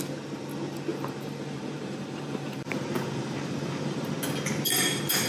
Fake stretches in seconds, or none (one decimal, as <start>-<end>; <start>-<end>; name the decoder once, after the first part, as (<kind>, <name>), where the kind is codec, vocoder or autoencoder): 0.9-4.1 (vocoder, BigVGAN v2)